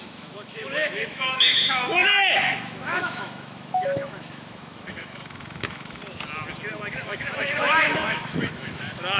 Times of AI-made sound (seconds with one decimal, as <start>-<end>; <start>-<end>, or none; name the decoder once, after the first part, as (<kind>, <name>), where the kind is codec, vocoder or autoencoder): 0.0-6.0 (autoencoder, DAC-VAE); 6.9-9.2

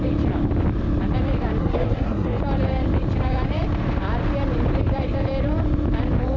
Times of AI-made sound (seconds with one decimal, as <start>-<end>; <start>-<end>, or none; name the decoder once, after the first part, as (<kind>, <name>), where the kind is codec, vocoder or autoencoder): 1.6-2.4 (codec, SNAC)

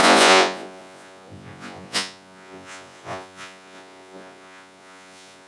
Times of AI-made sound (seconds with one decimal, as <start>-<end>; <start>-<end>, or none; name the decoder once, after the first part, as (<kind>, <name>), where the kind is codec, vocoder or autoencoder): 0.0-5.5 (vocoder, Vocos)

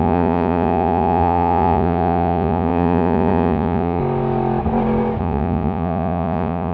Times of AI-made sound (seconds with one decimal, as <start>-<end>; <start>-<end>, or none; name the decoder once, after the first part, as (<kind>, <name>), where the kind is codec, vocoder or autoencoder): 0.0-4.0 (vocoder, Vocos); 5.2-6.7

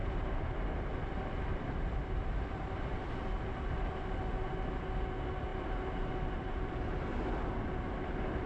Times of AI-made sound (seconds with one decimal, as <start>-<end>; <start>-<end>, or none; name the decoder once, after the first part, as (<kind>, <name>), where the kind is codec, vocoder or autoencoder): 0.0-3.1 (vocoder, BigVGAN v2)

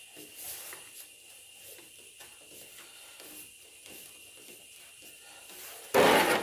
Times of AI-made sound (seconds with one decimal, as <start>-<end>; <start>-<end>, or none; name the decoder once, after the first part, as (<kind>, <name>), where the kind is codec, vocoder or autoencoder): none

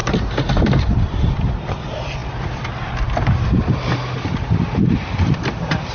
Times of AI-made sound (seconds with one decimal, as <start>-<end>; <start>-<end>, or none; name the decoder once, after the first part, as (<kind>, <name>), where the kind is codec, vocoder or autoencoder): none

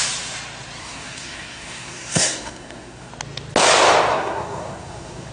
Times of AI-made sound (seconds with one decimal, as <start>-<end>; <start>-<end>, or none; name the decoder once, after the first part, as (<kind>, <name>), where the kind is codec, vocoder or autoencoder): 0.8-3.1 (codec, SNAC); 4.1-5.3